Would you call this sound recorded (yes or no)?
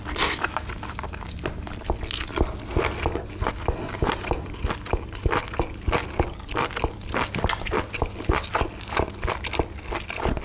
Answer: yes